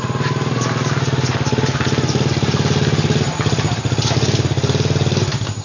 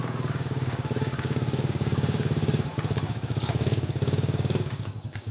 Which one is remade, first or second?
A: second